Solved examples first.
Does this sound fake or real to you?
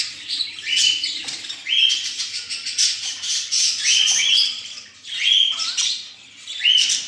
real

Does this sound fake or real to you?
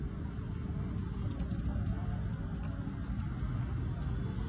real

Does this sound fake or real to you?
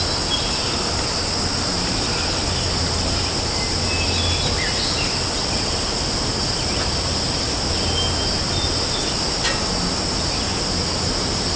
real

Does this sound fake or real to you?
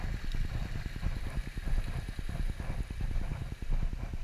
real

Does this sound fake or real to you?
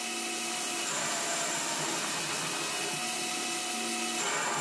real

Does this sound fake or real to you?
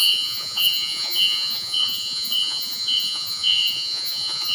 fake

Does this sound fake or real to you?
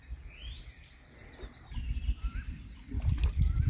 real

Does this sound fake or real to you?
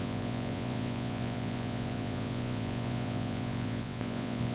fake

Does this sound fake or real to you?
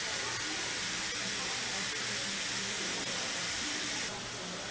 real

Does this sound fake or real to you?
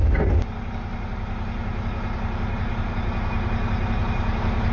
real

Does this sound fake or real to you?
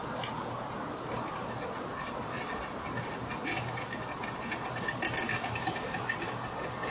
real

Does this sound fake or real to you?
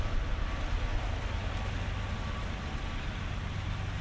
real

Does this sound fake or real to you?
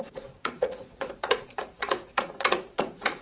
fake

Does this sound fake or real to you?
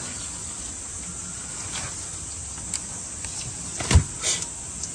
real